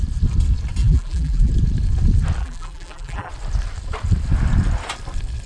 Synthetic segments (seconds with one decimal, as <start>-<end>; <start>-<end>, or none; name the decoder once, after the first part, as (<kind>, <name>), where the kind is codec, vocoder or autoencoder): 0.8-1.5 (vocoder, BigVGAN v2); 2.4-3.3